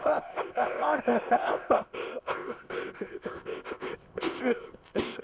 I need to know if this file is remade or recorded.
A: remade